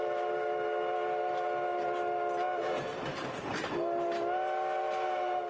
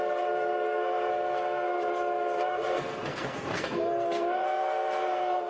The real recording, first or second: first